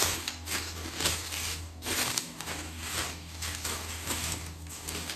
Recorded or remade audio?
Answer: remade